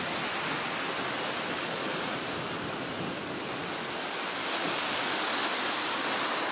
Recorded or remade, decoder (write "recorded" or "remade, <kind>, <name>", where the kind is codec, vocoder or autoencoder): recorded